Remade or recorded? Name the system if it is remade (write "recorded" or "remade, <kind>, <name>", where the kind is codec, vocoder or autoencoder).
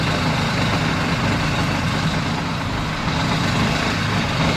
recorded